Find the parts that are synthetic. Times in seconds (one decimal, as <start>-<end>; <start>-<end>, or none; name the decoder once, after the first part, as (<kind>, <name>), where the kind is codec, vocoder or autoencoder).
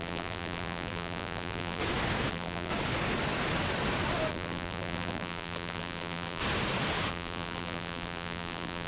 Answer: 0.0-1.8 (vocoder, BigVGAN v2); 2.3-2.7; 4.3-6.4; 7.1-8.9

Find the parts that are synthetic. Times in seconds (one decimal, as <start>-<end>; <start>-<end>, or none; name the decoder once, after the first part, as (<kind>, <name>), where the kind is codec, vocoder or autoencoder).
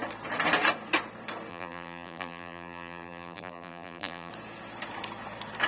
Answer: 1.5-4.3 (vocoder, BigVGAN v2)